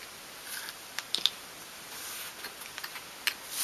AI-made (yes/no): no